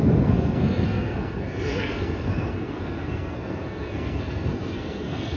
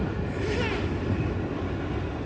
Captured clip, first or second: second